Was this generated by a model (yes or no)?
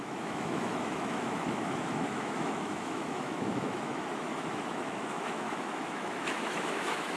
yes